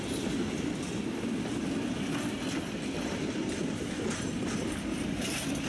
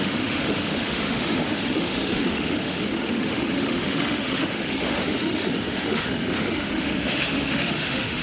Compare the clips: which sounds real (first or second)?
first